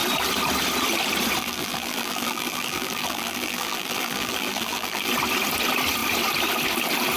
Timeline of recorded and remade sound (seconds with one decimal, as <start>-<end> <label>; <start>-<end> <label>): 0.0-1.4 recorded; 1.4-5.1 remade; 5.1-7.2 recorded